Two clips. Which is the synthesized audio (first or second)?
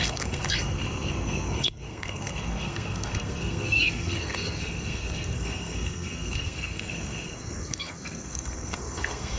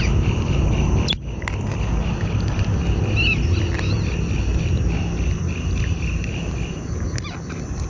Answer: first